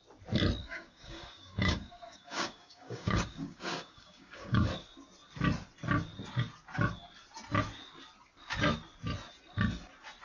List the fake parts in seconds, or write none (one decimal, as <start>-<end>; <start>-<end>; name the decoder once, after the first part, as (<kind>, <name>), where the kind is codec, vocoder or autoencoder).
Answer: 0.6-4.7 (codec, DAC)